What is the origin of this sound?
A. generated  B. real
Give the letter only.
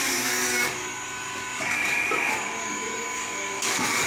A